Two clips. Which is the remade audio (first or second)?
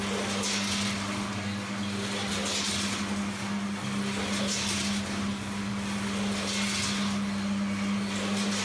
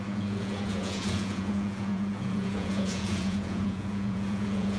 second